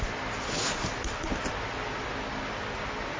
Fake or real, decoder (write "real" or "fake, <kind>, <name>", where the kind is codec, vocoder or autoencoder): real